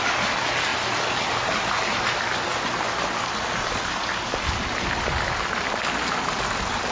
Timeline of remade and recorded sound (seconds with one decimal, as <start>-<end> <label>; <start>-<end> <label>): 0.0-6.9 recorded